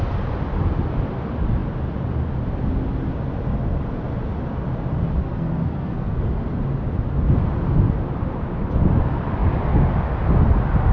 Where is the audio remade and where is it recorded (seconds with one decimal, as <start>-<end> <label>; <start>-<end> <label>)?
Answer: 0.0-5.2 recorded; 5.2-6.2 remade; 6.2-10.9 recorded